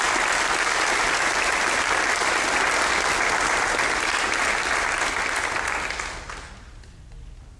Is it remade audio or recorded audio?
recorded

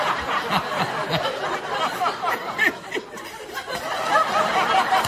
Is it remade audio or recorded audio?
recorded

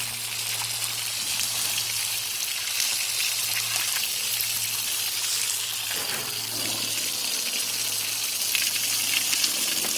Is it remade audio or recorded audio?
recorded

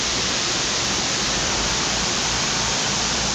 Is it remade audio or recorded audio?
remade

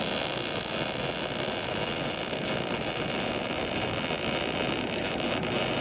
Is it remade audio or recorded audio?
remade